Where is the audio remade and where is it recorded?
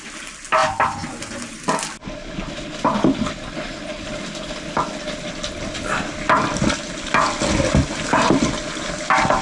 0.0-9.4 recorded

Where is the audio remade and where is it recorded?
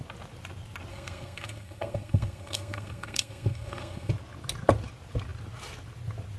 0.0-0.9 recorded; 0.9-4.1 remade; 4.1-6.4 recorded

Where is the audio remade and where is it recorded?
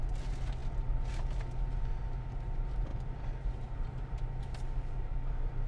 0.0-2.9 recorded; 2.9-4.4 remade; 4.4-5.7 recorded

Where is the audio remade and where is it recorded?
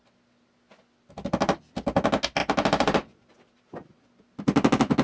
0.0-5.0 recorded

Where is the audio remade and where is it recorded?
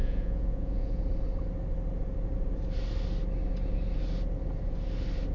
0.0-1.0 remade; 1.0-5.3 recorded